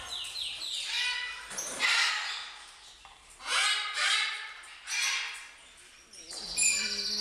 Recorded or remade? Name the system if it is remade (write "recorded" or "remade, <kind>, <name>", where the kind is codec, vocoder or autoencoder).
recorded